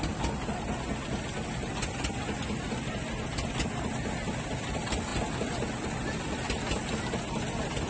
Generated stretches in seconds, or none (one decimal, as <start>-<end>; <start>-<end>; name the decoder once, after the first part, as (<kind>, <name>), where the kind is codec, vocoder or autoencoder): none